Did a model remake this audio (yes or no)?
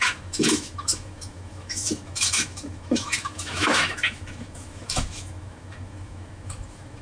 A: yes